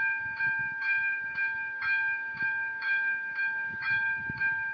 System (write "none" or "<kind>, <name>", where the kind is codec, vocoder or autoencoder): codec, DAC